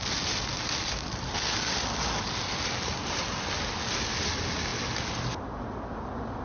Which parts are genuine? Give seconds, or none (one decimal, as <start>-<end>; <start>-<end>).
0.0-6.4